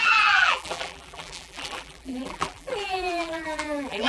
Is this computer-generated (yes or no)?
yes